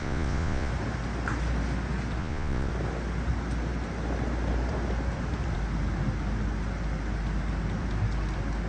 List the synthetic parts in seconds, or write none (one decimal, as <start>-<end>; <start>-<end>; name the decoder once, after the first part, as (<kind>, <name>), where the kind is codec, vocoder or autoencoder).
0.0-0.7 (vocoder, Vocos); 2.2-2.7